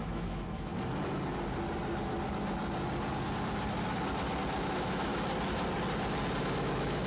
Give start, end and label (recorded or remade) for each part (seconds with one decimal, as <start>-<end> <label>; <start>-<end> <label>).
0.0-0.7 remade; 0.7-4.6 recorded; 4.6-5.1 remade; 5.1-6.4 recorded; 6.4-7.1 remade